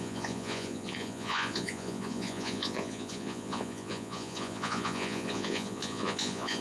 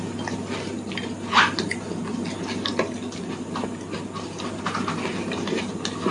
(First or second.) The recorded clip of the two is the second